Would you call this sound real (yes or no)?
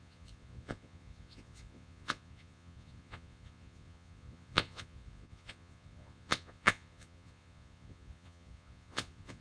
no